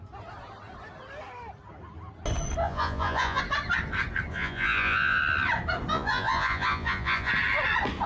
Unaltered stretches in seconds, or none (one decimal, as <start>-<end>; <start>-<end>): 0.0-2.6; 3.4-4.3; 5.2-5.9; 7.3-8.1